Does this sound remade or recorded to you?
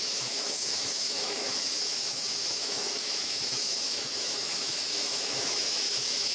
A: remade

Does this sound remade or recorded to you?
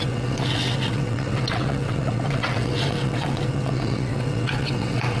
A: remade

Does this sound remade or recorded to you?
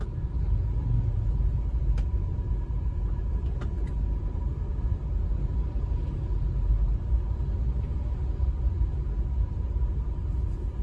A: recorded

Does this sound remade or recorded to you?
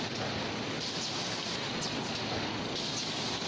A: recorded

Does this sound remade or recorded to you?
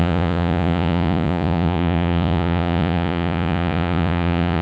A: remade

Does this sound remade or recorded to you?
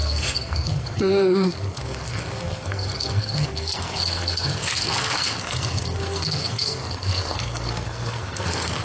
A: remade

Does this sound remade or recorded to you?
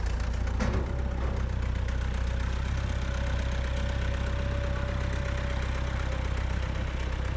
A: recorded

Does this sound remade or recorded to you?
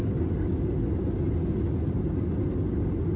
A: recorded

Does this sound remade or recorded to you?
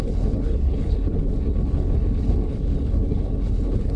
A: remade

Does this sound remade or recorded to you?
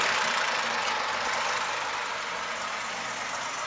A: recorded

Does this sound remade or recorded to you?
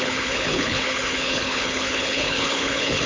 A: remade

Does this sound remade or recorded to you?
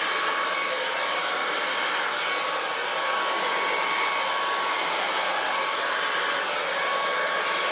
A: recorded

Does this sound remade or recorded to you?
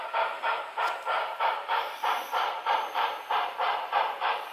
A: remade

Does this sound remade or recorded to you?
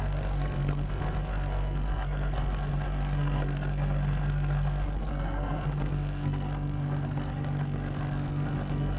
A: remade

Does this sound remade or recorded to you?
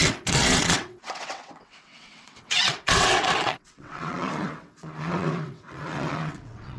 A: remade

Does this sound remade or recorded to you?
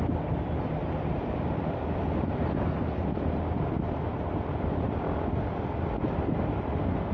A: recorded